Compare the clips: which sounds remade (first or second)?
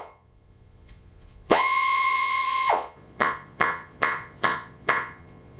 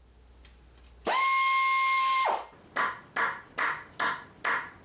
first